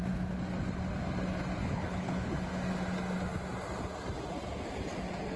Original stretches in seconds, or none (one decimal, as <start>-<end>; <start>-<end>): 0.0-1.6; 2.3-5.4